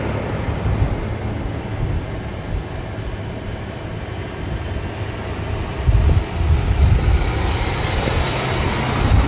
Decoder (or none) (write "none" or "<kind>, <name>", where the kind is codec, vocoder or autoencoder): none